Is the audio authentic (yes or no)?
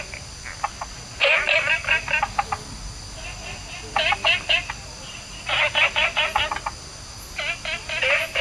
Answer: yes